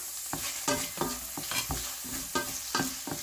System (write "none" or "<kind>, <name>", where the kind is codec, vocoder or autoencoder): none